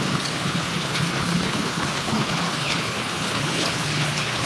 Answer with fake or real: fake